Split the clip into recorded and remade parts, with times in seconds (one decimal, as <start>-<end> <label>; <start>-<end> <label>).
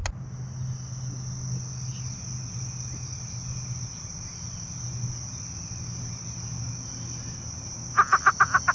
0.0-8.7 recorded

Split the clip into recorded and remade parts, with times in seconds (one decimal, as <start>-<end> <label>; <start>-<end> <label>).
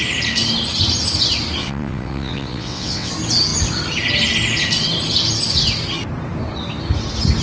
0.0-1.6 recorded; 1.6-3.1 remade; 3.1-7.4 recorded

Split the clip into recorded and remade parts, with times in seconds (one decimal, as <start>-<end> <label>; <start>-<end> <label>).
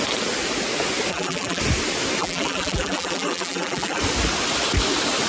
0.0-1.1 recorded; 1.1-1.6 remade; 1.6-2.2 recorded; 2.2-4.0 remade; 4.0-5.3 recorded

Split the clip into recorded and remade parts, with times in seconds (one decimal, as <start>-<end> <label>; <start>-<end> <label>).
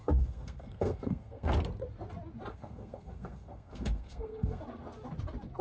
0.0-1.5 remade; 1.5-2.5 recorded; 2.5-4.6 remade; 4.6-5.6 recorded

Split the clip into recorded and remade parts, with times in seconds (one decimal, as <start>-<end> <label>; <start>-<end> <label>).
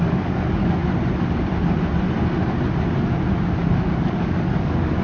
0.0-0.8 remade; 0.8-3.8 recorded; 3.8-5.0 remade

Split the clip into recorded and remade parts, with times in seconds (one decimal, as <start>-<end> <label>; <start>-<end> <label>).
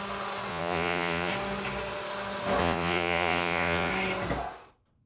0.0-0.5 recorded; 0.5-1.3 remade; 1.3-2.6 recorded; 2.6-3.9 remade; 3.9-5.1 recorded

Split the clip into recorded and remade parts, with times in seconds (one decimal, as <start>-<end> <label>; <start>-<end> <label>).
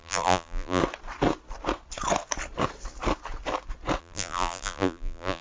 0.0-0.8 remade; 0.8-4.0 recorded; 4.0-5.4 remade